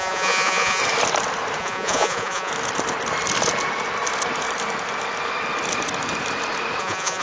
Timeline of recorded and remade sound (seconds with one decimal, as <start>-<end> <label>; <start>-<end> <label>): 0.0-0.8 remade; 0.8-1.6 recorded; 1.6-2.5 remade; 2.5-6.8 recorded; 6.8-7.2 remade